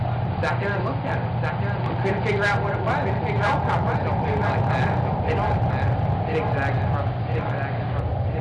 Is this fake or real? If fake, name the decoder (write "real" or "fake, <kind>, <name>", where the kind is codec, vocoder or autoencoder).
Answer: real